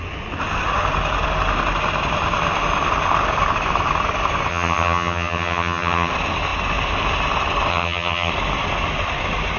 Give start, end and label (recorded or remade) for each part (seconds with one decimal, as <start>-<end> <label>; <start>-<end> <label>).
0.0-4.5 recorded; 4.5-6.1 remade; 6.1-7.7 recorded; 7.7-8.3 remade; 8.3-9.6 recorded